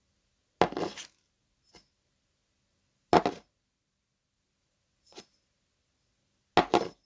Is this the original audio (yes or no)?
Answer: yes